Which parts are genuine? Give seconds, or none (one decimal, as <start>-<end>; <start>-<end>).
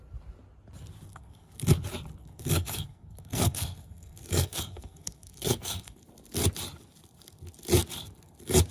0.0-1.1; 1.6-2.2; 6.0-8.7